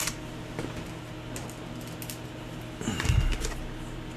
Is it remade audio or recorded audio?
recorded